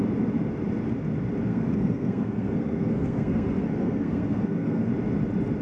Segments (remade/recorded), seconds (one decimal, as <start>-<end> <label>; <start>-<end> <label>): 0.0-1.5 recorded; 1.5-4.9 remade; 4.9-5.6 recorded